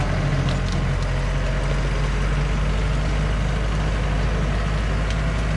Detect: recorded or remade recorded